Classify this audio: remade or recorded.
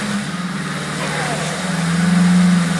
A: recorded